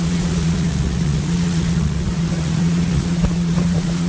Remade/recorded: remade